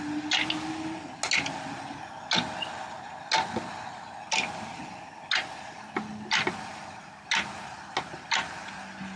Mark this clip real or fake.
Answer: real